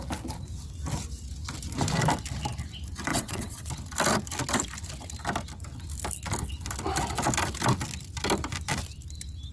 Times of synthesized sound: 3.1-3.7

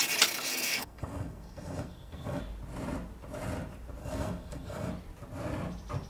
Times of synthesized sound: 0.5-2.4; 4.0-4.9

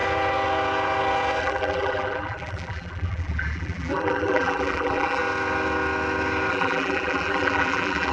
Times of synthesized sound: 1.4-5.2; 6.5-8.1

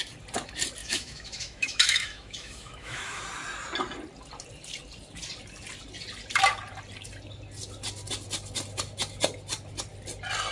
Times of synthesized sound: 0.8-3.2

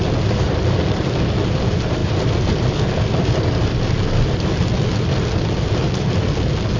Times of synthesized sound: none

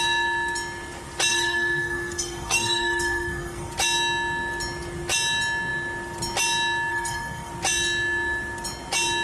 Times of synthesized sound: 1.3-3.7; 6.9-7.5